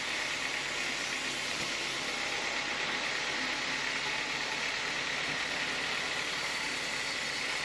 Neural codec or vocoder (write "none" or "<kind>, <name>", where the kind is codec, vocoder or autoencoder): none